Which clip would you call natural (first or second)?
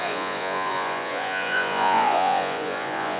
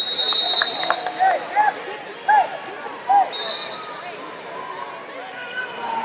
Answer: second